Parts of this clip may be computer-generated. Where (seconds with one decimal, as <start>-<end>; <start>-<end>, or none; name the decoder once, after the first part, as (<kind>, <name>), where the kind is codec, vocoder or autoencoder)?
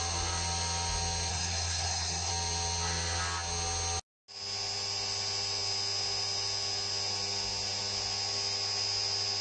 1.3-2.3 (codec, SNAC)